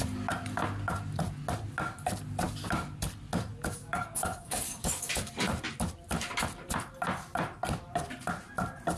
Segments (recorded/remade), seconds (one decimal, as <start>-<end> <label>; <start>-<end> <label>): 0.0-3.5 recorded; 3.5-5.1 remade; 5.1-9.0 recorded